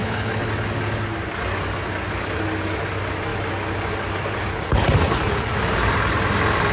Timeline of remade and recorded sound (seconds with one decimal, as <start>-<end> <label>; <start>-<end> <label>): 0.0-0.5 remade; 0.5-4.5 recorded; 4.5-5.5 remade; 5.5-6.7 recorded